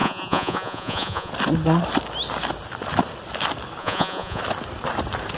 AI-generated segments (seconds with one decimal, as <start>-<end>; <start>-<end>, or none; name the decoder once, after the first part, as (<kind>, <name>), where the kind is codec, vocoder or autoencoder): 0.0-1.3 (vocoder, Vocos); 3.8-4.4